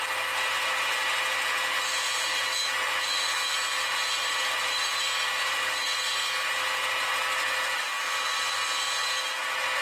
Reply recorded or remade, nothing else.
recorded